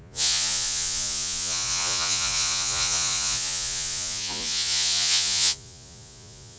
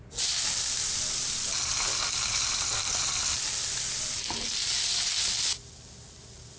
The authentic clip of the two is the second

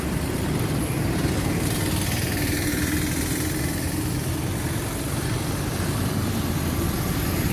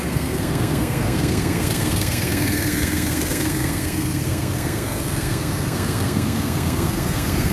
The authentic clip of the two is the first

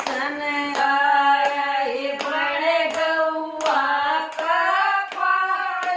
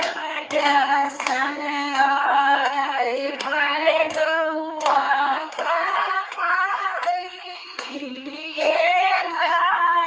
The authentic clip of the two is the first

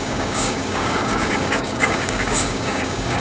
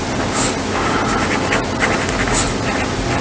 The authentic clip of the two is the second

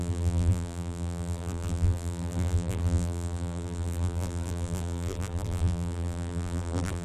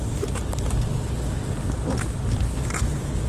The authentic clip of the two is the second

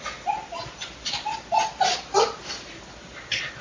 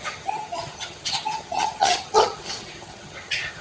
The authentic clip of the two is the first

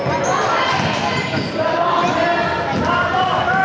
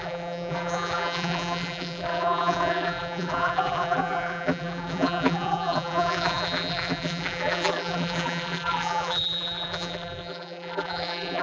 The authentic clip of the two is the first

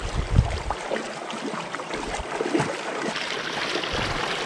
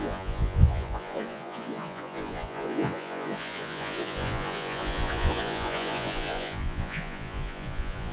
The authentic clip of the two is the first